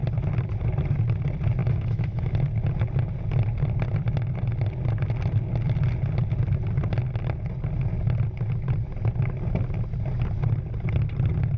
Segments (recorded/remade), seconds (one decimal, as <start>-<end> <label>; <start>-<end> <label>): 0.0-1.6 recorded; 1.6-2.3 remade; 2.3-11.6 recorded